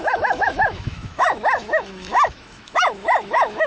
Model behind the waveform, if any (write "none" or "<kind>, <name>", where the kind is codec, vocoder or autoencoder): autoencoder, DAC-VAE